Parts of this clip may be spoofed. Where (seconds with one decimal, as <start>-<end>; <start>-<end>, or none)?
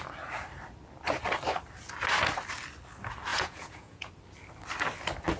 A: 3.3-4.1